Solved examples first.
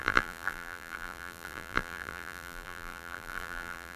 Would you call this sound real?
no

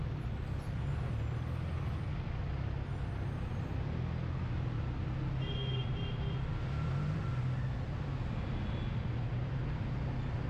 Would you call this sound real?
yes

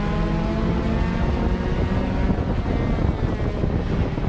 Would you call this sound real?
yes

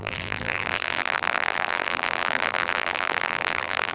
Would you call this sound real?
no